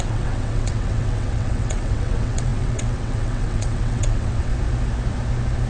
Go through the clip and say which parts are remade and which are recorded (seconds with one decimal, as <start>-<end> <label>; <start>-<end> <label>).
0.0-4.5 remade; 4.5-5.7 recorded